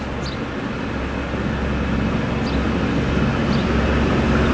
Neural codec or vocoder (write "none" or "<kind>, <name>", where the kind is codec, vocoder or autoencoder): none